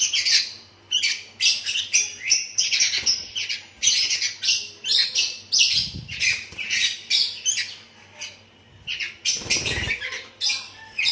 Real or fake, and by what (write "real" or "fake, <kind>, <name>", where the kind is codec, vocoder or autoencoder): fake, vocoder, BigVGAN v2